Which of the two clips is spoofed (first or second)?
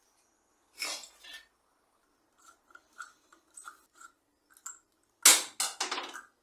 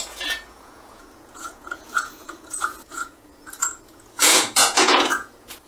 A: second